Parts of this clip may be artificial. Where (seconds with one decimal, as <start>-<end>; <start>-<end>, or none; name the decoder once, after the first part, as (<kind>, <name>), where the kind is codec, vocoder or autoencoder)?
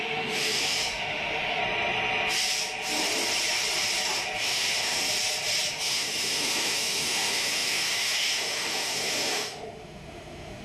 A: 0.0-1.6 (autoencoder, DAC-VAE); 4.4-5.0; 5.7-10.6